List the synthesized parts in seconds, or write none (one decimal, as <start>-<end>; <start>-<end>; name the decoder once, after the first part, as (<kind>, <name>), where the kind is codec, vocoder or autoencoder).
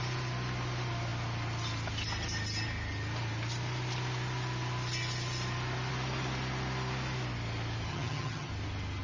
7.9-8.5 (vocoder, HiFi-GAN)